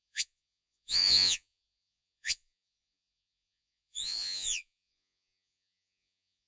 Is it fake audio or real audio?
fake